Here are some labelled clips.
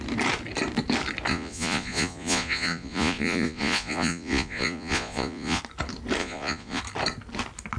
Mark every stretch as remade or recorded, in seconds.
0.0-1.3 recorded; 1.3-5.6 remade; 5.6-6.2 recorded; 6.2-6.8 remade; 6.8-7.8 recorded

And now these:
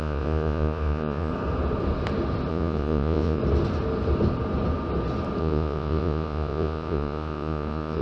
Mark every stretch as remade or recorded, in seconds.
0.0-1.3 remade; 1.3-2.5 recorded; 2.5-3.4 remade; 3.4-5.4 recorded; 5.4-8.0 remade